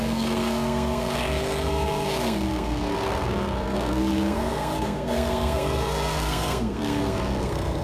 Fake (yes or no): yes